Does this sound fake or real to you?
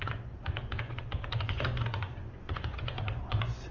fake